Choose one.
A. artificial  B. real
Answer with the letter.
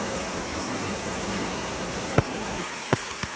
A